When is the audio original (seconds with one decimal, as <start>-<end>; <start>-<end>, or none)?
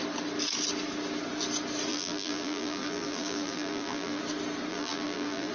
0.0-1.9; 4.2-4.7